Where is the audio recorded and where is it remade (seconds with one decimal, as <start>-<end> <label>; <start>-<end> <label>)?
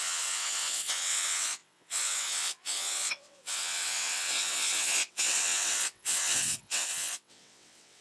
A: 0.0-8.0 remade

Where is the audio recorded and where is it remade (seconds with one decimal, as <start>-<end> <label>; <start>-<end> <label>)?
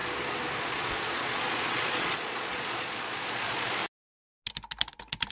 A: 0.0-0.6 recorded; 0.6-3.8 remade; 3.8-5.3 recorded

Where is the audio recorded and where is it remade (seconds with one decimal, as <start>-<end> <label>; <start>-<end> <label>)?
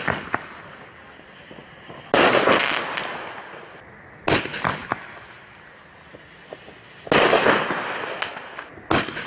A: 0.0-9.3 recorded